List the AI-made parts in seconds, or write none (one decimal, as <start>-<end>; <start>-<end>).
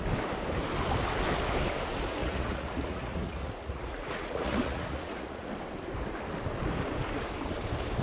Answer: 2.2-5.5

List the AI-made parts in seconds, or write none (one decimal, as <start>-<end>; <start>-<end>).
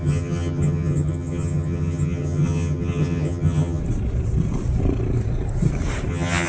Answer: 0.0-3.8; 6.1-6.5